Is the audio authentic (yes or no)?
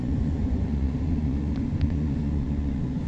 no